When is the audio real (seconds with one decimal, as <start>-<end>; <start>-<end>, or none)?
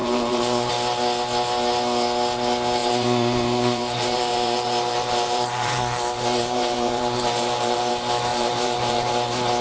0.7-2.8; 7.9-8.3; 9.1-9.6